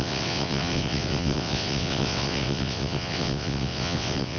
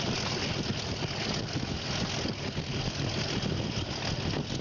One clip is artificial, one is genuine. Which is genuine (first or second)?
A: second